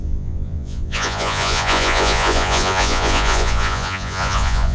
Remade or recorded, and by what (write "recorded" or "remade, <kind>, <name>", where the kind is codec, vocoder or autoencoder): remade, vocoder, Vocos